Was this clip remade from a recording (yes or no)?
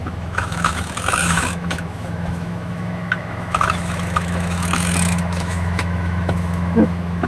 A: yes